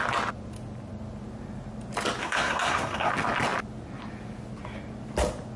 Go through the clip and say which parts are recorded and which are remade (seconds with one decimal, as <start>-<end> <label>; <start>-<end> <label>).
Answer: 0.0-2.2 recorded; 2.2-3.1 remade; 3.1-5.6 recorded